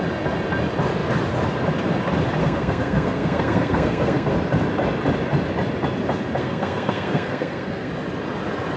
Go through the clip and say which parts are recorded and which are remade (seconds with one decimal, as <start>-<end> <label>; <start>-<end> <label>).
0.0-2.4 recorded; 2.4-4.3 remade; 4.3-6.4 recorded; 6.4-7.9 remade; 7.9-8.8 recorded